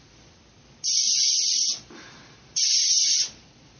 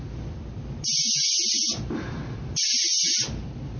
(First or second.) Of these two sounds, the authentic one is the second